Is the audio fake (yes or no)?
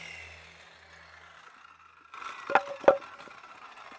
no